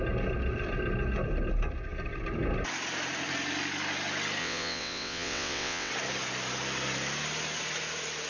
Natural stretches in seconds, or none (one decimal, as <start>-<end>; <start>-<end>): 0.0-4.4; 5.9-8.3